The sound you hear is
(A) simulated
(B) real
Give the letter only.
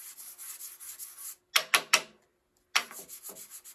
B